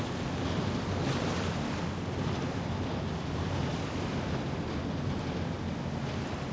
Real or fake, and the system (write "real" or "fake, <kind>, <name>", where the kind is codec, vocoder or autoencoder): real